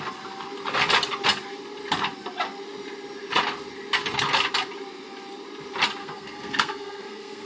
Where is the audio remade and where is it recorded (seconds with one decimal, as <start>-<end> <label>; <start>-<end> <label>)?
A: 0.0-6.0 recorded; 6.0-7.5 remade